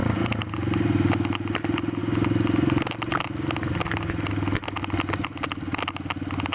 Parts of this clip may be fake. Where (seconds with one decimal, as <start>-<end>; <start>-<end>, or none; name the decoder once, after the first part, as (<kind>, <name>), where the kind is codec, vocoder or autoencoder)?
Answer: none